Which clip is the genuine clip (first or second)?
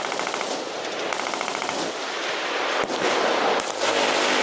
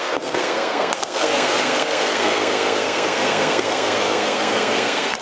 first